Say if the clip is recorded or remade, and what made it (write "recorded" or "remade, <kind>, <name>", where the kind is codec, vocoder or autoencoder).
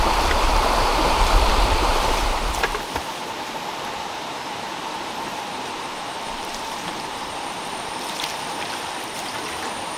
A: remade, vocoder, BigVGAN v2